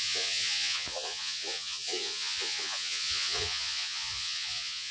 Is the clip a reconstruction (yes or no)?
yes